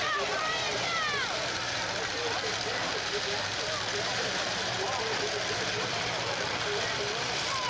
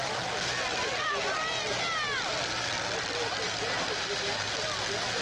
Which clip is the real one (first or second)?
second